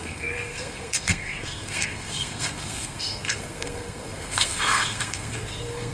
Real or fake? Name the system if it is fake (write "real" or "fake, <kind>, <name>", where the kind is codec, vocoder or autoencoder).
fake, codec, SNAC